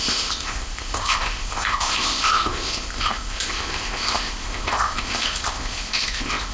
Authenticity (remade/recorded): remade